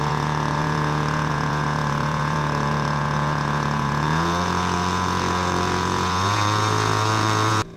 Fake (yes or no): yes